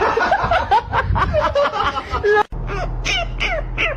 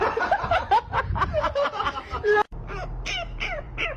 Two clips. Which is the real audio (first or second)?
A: first